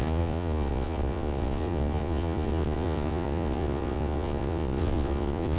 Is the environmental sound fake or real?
fake